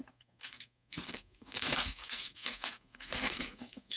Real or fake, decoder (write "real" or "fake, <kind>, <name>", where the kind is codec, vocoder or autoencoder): fake, codec, SNAC